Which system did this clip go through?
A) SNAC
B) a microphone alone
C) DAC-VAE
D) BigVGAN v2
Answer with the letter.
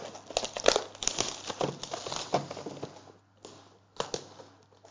B